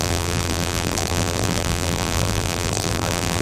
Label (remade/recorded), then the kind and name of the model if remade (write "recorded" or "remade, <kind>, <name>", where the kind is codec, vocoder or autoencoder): remade, vocoder, BigVGAN v2